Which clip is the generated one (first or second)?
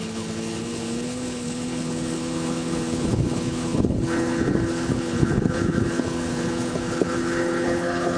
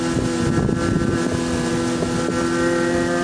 first